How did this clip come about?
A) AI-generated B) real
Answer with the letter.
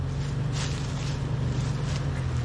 B